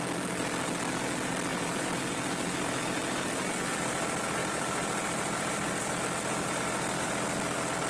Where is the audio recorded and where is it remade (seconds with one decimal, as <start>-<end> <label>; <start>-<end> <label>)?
0.0-1.5 recorded; 1.5-3.7 remade; 3.7-4.4 recorded; 4.4-7.1 remade; 7.1-7.9 recorded